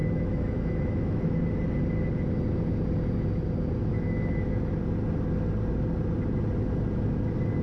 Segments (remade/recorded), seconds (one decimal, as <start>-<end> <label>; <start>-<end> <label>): 0.0-1.4 remade; 1.4-3.8 recorded; 3.8-4.7 remade; 4.7-7.6 recorded